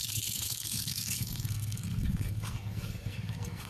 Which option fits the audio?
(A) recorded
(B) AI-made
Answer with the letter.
B